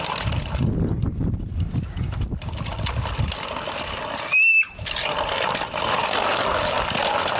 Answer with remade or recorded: recorded